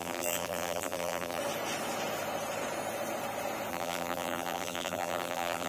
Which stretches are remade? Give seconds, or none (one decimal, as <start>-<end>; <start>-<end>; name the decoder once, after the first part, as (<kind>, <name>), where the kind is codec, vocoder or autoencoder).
0.0-1.4 (vocoder, BigVGAN v2); 3.7-5.7